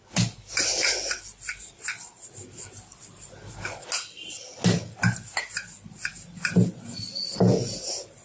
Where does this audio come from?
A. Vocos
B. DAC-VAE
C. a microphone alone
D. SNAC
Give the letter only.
C